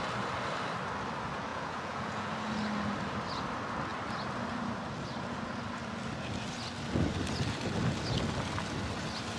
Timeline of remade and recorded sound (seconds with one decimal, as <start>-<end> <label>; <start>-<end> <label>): 0.0-1.5 recorded; 1.5-2.3 remade; 2.3-9.4 recorded